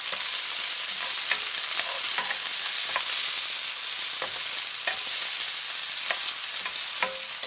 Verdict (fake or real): real